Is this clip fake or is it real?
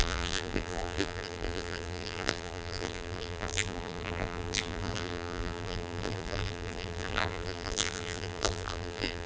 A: fake